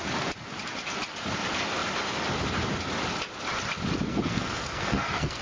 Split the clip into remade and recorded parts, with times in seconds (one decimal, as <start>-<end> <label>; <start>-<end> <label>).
0.0-4.1 recorded; 4.1-5.4 remade